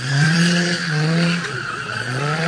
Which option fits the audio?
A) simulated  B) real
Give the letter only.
A